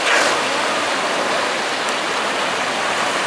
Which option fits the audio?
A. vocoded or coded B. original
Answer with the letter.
B